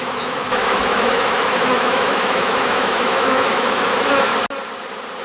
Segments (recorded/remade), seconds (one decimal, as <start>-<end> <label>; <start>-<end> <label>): 0.0-4.3 remade; 4.3-5.2 recorded